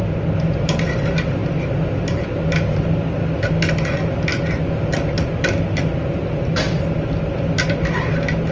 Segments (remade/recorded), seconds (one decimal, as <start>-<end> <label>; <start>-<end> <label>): 0.0-8.5 recorded